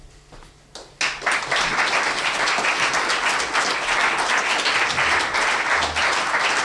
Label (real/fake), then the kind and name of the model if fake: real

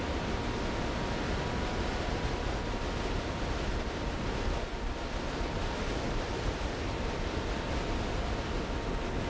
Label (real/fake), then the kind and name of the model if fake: real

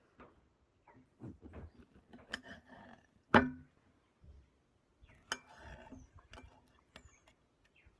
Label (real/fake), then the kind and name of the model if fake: real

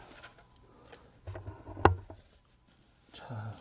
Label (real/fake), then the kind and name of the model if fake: real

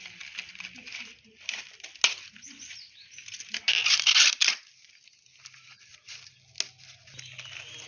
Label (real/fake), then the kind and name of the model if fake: real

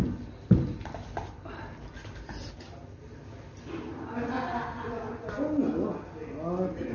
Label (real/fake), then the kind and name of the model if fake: real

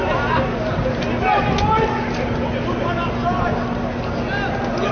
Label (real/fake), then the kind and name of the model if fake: real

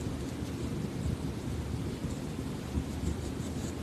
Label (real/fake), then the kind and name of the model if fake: real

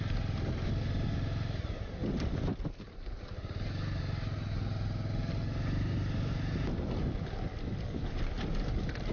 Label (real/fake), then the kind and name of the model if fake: real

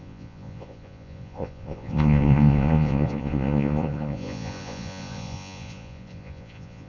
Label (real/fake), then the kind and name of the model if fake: fake, vocoder, Vocos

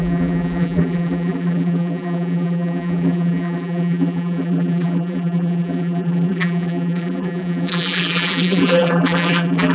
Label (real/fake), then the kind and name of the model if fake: fake, vocoder, BigVGAN v2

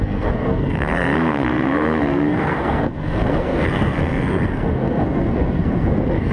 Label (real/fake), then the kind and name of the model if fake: fake, codec, SNAC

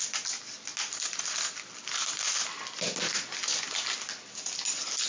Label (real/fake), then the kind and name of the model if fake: real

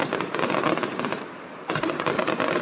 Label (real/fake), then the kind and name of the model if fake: real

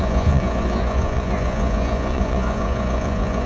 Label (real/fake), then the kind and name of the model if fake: fake, vocoder, Vocos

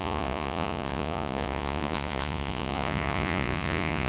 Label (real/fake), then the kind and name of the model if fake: fake, vocoder, Vocos